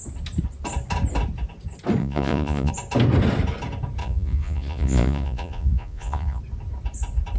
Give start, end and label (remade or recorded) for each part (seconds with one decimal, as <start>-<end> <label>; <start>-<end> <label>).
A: 0.0-2.0 recorded; 2.0-2.7 remade; 2.7-4.0 recorded; 4.0-6.4 remade; 6.4-7.4 recorded